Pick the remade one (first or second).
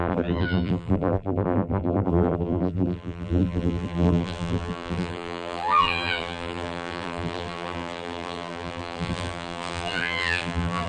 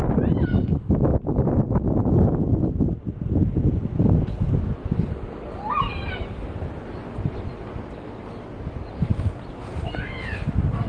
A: first